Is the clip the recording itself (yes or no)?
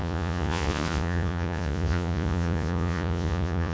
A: no